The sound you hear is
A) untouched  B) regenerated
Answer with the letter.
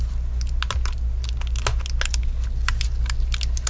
A